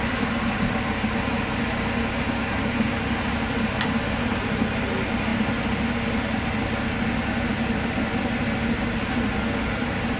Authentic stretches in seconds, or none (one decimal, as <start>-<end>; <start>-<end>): 0.0-10.2

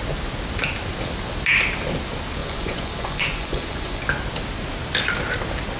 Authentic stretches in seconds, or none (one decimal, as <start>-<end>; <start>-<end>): 0.0-2.4; 4.0-5.8

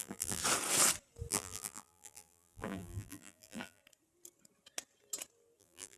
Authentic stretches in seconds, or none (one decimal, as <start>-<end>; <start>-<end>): 0.4-1.3; 3.8-5.6

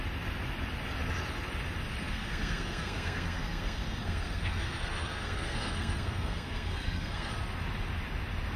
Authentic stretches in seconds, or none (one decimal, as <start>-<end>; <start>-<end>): 0.0-2.1; 7.3-8.6

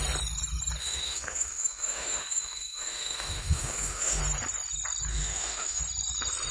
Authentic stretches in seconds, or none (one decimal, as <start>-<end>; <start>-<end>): 0.0-0.8; 4.2-5.1; 5.8-6.5

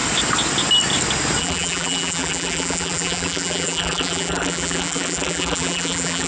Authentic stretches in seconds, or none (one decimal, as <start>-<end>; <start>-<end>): 0.0-1.4

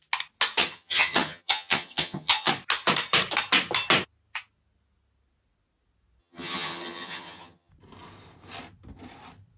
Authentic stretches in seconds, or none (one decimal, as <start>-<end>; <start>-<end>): 0.0-0.6; 2.5-6.2; 7.7-9.6